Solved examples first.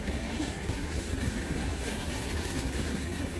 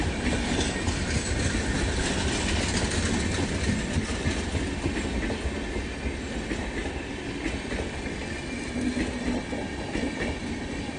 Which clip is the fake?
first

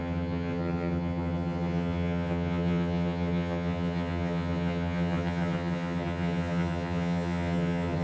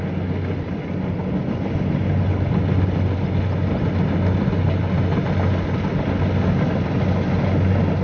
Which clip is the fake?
first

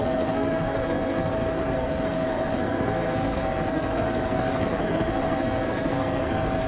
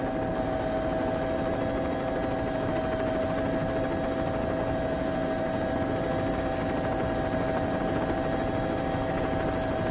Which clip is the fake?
first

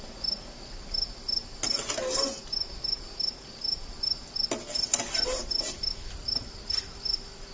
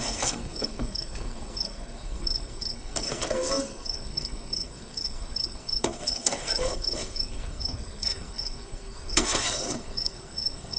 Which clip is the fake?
second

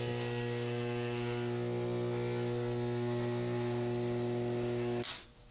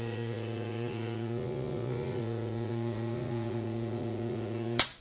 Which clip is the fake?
second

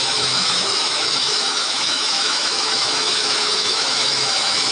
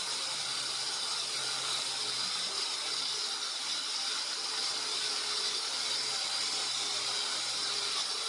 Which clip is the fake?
first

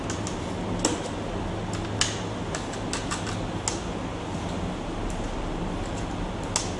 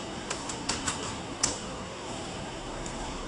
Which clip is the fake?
second